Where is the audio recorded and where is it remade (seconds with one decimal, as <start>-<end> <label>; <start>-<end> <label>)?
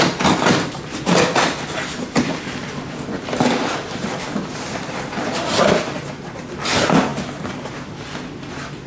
0.0-8.9 recorded